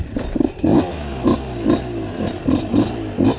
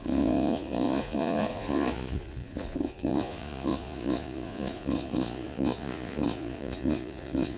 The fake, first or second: second